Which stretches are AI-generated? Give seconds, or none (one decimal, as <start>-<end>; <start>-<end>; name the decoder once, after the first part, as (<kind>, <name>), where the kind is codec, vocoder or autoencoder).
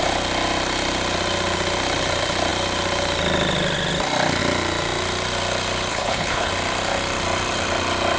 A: 5.9-6.5 (codec, HILCodec)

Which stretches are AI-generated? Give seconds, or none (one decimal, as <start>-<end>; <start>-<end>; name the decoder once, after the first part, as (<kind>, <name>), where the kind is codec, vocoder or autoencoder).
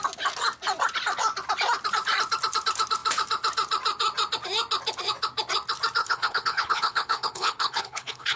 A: 6.0-8.4 (codec, HILCodec)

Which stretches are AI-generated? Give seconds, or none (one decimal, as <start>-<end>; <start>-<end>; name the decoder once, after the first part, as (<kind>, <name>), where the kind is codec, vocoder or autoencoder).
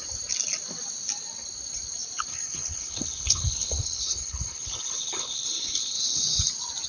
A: 2.3-6.4 (codec, HILCodec)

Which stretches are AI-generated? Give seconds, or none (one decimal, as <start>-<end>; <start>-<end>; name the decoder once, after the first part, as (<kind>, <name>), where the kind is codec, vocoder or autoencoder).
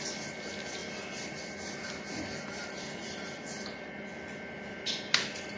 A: none